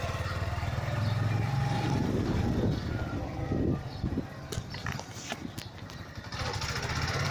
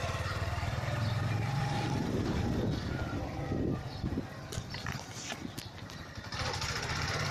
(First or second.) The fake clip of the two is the second